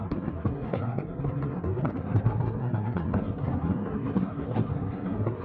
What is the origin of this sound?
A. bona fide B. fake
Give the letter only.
B